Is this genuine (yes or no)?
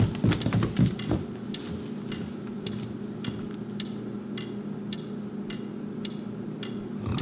yes